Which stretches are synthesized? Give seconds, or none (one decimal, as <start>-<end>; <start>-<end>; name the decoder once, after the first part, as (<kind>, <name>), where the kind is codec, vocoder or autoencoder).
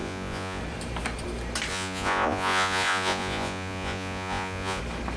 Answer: 0.0-0.6 (vocoder, Vocos); 1.7-4.8